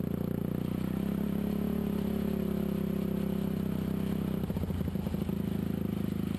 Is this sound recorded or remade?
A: recorded